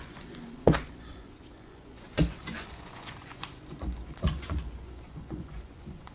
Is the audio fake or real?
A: fake